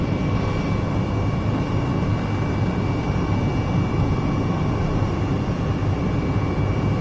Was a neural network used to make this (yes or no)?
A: no